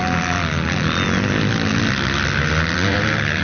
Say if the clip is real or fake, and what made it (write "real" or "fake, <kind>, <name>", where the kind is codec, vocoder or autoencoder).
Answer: real